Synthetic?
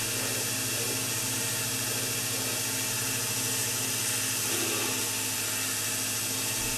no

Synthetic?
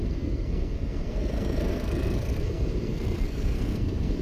yes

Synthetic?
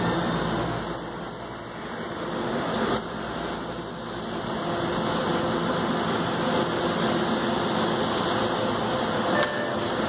no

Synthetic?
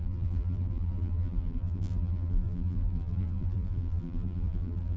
yes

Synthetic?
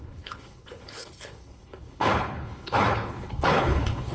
yes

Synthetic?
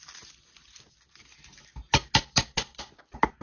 no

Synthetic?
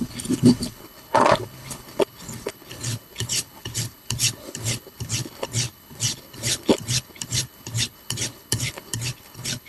yes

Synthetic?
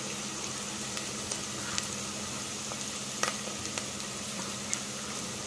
no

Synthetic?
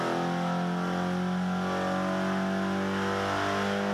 no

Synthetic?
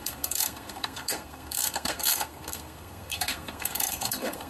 yes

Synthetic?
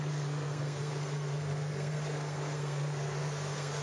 yes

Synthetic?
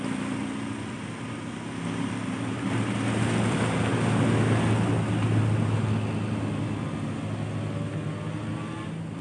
no